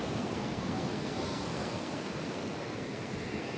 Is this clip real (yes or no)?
no